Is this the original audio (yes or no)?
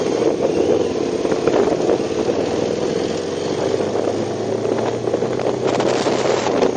yes